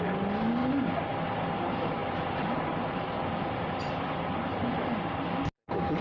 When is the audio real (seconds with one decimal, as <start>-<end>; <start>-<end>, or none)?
0.0-4.5; 5.0-6.0